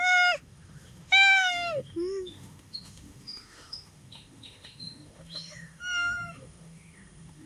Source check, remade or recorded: remade